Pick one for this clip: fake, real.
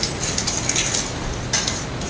real